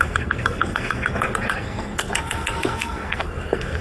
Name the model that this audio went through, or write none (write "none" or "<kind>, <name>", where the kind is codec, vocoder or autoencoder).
codec, SNAC